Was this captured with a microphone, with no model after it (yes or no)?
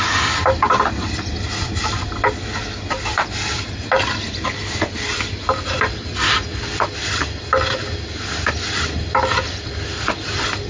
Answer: yes